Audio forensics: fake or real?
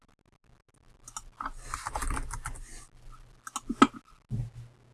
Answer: real